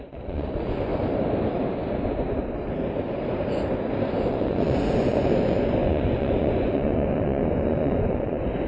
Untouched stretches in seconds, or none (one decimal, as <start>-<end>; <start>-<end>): 0.9-4.3